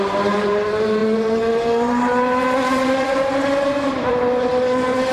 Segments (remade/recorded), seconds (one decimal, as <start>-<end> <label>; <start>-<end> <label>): 0.0-5.1 remade